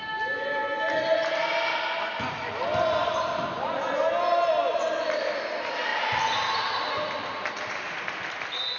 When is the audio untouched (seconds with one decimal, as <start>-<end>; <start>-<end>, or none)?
0.0-8.8